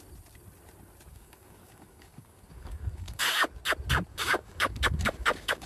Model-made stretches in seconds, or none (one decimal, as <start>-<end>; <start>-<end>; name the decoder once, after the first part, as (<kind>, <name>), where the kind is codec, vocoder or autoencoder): 1.1-3.5 (codec, DAC); 4.1-5.7